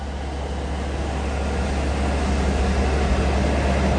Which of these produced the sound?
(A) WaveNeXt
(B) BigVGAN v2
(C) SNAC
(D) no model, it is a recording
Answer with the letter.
D